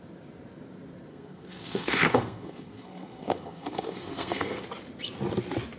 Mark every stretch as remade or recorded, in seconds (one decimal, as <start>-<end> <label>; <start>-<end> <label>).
0.0-1.1 recorded; 1.1-4.6 remade; 4.6-5.8 recorded